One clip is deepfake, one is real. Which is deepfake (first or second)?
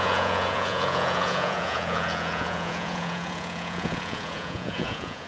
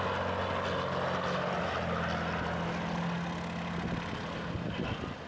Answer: first